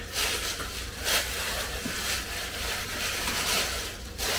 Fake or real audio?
real